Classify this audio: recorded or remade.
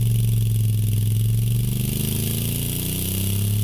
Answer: recorded